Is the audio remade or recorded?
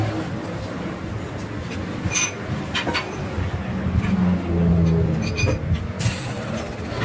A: recorded